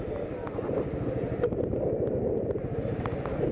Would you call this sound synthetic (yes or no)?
no